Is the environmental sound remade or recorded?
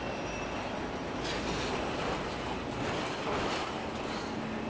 recorded